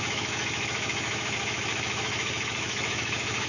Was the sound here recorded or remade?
remade